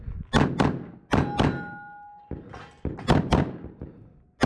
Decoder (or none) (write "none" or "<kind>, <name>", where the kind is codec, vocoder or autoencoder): none